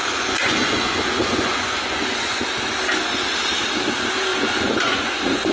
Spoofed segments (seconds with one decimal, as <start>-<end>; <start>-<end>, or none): 0.0-2.4; 4.3-5.5